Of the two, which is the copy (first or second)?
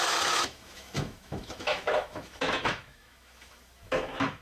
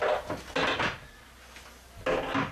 first